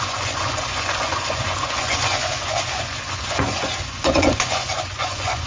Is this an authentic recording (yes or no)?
no